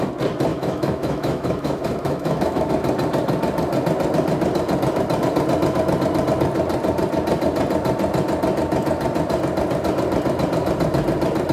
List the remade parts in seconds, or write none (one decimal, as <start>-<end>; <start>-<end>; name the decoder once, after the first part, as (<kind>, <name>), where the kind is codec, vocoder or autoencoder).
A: 0.5-2.7 (autoencoder, DAC-VAE)